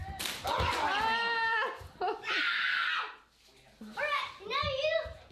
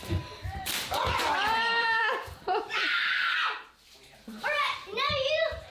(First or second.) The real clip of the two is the first